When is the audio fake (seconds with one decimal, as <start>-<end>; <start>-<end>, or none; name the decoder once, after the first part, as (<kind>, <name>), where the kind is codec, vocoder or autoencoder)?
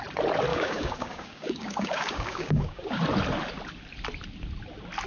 0.5-3.0 (codec, DAC)